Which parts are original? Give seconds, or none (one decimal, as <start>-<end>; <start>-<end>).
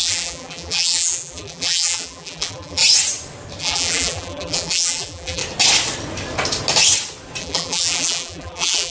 2.8-3.6; 5.4-7.4